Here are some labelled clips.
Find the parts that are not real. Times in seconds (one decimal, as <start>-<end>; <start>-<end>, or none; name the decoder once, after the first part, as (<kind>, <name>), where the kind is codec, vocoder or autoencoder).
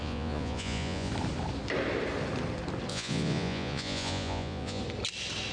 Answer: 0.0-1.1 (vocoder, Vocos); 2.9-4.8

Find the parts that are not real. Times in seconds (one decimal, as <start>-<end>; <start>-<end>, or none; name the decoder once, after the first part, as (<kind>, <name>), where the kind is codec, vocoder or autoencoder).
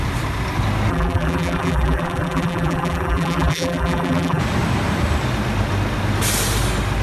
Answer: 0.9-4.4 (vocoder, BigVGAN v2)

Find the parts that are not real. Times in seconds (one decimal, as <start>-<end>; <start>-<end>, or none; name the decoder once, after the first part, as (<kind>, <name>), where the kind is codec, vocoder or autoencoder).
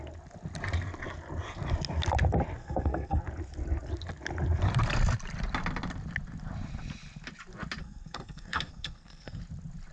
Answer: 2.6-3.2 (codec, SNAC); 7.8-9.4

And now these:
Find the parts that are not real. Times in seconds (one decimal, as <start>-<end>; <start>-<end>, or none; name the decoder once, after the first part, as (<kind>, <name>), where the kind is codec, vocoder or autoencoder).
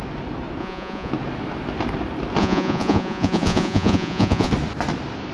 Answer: 0.6-1.1 (vocoder, Vocos); 2.4-4.5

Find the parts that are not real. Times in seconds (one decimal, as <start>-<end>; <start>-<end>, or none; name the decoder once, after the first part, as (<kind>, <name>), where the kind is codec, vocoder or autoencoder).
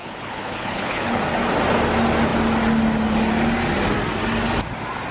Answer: 0.0-1.2 (codec, HILCodec)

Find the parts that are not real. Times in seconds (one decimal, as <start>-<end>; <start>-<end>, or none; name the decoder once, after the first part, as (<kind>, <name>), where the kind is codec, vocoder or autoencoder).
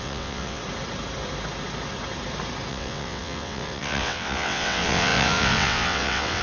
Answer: 0.0-0.6 (vocoder, WaveNeXt); 2.7-6.4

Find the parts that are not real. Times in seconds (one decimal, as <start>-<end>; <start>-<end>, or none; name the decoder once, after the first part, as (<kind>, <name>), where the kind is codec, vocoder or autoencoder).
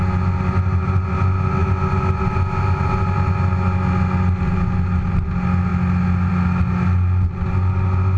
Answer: none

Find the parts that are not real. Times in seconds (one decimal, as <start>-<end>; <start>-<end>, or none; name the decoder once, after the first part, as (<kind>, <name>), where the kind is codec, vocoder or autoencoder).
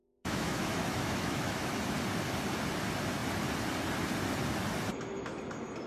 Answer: 0.0-2.0 (autoencoder, DAC-VAE)